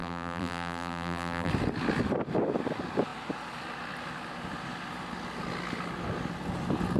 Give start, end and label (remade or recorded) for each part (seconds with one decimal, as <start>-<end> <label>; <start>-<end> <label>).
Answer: 0.0-1.5 remade; 1.5-7.0 recorded